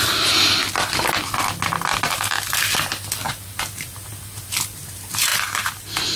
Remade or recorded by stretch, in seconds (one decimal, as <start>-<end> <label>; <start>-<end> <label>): 0.0-0.6 remade; 0.6-3.3 recorded; 3.3-6.2 remade

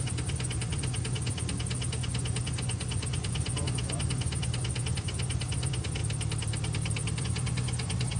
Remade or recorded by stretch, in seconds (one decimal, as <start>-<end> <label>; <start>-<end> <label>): 0.0-6.0 remade; 6.0-7.2 recorded; 7.2-8.2 remade

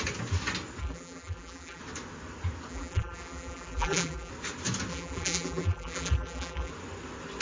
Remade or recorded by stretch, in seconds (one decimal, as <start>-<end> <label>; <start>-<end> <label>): 0.0-0.8 recorded; 0.8-1.8 remade; 1.8-2.7 recorded; 2.7-4.3 remade; 4.3-4.9 recorded; 4.9-6.7 remade; 6.7-7.4 recorded

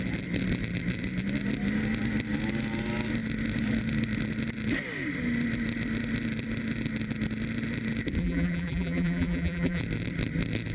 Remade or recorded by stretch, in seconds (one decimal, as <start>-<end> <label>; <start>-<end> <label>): 0.0-8.2 recorded; 8.2-9.8 remade; 9.8-10.7 recorded

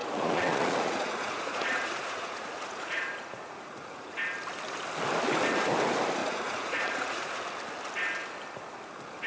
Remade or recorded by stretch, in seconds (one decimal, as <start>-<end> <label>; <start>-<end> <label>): 0.0-4.2 remade; 4.2-6.2 recorded; 6.2-7.4 remade; 7.4-9.3 recorded

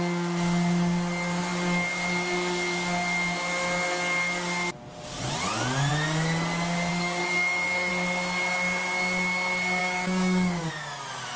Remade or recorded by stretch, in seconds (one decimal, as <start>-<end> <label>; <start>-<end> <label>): 0.0-6.9 recorded; 6.9-7.9 remade; 7.9-9.8 recorded; 9.8-10.7 remade; 10.7-11.4 recorded